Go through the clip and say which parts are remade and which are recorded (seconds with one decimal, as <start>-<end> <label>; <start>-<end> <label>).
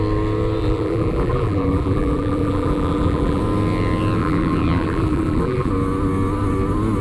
0.0-0.6 recorded; 0.6-3.4 remade; 3.4-4.2 recorded; 4.2-5.7 remade; 5.7-7.0 recorded